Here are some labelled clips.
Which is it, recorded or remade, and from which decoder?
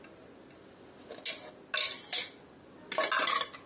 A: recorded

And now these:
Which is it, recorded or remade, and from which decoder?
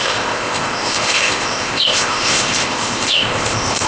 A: remade, codec, ZipCodec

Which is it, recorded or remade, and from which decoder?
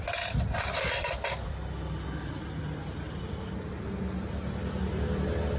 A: recorded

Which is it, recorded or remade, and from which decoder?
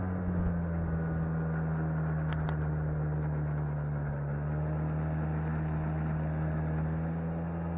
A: recorded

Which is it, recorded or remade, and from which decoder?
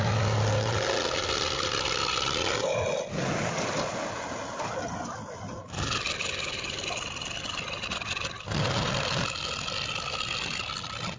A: recorded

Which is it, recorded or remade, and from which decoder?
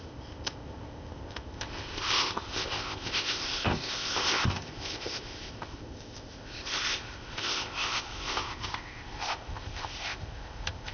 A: remade, codec, ZipCodec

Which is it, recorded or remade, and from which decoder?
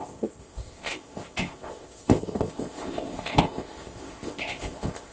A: remade, codec, ZipCodec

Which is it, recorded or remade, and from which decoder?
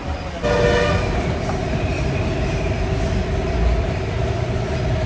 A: recorded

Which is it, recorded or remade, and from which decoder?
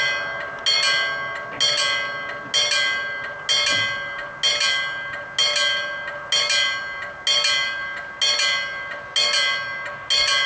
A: recorded